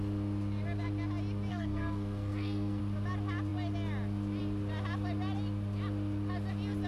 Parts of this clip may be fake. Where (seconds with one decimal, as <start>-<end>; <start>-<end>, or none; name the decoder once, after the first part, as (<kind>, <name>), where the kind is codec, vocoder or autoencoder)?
1.5-2.8 (codec, SNAC)

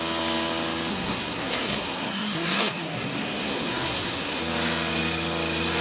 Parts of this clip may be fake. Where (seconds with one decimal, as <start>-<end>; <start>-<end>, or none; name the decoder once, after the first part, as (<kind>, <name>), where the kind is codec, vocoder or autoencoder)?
0.9-4.4 (codec, SNAC)

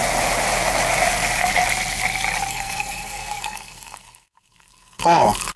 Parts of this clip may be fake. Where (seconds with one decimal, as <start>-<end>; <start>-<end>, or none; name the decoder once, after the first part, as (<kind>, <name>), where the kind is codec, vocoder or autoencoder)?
2.5-5.6 (codec, SNAC)

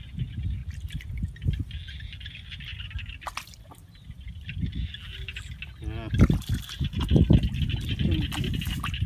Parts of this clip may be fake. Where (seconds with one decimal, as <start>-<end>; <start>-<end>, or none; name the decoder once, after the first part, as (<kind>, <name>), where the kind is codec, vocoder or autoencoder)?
none